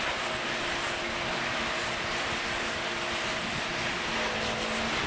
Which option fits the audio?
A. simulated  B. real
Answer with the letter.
B